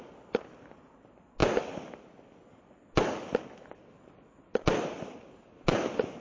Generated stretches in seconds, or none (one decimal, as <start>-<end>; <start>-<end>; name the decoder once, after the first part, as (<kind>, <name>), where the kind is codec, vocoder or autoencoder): none